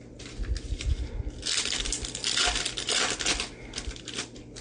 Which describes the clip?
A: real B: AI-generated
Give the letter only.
A